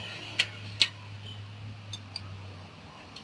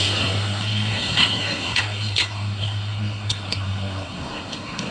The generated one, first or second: second